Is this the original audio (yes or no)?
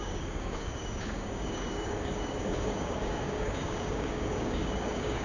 no